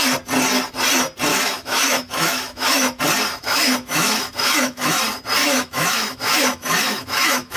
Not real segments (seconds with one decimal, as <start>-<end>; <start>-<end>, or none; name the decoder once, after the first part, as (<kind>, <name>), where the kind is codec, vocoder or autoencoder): 1.3-3.0 (autoencoder, DAC-VAE); 3.4-5.0; 5.4-7.6